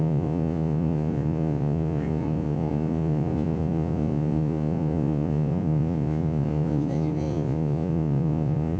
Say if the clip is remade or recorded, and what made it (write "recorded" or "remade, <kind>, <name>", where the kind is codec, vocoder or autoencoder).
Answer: remade, vocoder, Vocos